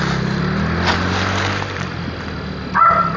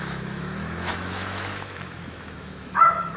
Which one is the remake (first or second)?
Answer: second